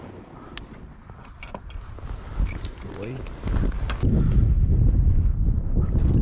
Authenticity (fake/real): real